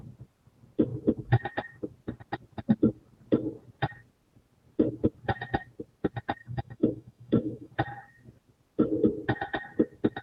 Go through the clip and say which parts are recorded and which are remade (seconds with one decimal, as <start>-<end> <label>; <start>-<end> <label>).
0.0-6.4 recorded; 6.4-7.7 remade; 7.7-10.2 recorded